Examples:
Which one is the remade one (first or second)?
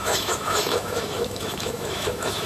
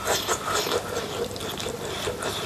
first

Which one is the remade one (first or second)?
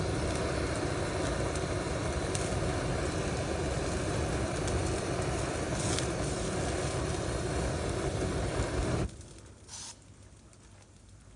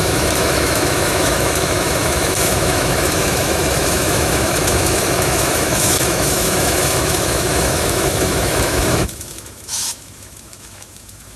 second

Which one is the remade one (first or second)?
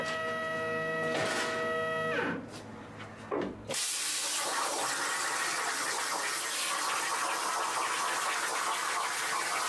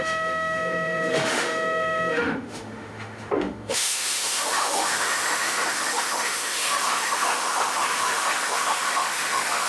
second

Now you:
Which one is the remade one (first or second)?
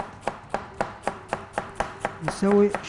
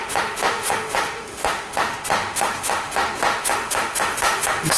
second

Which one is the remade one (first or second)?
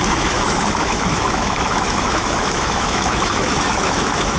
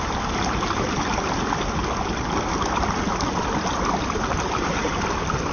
first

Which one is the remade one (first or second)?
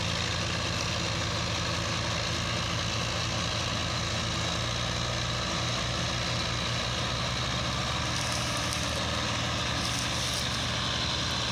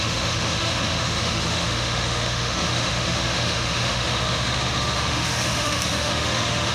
second